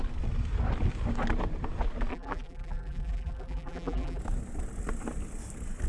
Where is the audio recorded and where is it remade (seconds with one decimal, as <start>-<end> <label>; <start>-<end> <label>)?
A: 0.0-2.1 recorded; 2.1-4.2 remade; 4.2-5.9 recorded